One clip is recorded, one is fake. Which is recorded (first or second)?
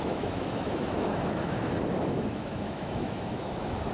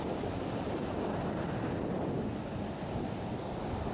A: second